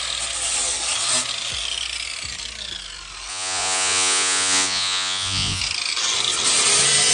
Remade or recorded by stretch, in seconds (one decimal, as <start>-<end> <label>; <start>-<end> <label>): 0.0-3.3 recorded; 3.3-5.6 remade; 5.6-7.1 recorded